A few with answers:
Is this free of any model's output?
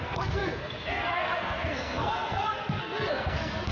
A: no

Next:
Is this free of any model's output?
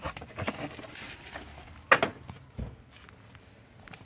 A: yes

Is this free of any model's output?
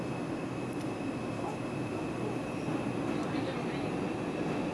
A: yes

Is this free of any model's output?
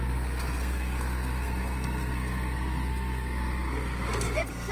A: no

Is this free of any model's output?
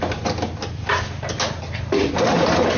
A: yes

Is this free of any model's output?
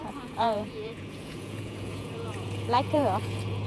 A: no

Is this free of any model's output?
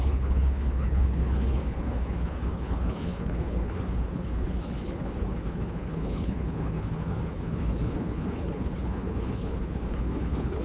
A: no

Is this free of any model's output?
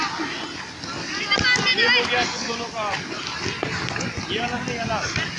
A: yes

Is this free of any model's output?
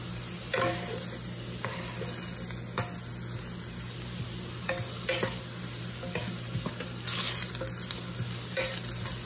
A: yes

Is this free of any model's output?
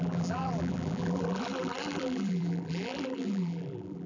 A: no